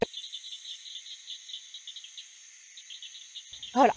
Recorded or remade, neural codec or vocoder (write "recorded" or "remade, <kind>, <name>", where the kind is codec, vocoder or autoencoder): recorded